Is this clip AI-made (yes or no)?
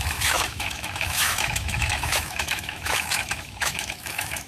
yes